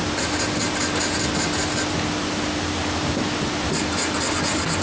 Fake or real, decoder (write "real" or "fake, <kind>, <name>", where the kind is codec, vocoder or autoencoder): real